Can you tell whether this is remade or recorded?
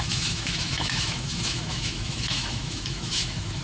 remade